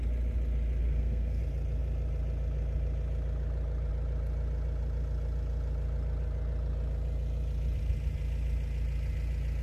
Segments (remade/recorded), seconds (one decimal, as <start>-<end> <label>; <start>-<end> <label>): 0.0-0.8 recorded; 0.8-1.4 remade; 1.4-9.6 recorded